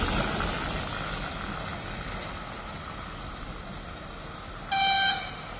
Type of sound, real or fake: real